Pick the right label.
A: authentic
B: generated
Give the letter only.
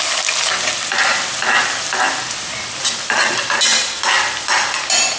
A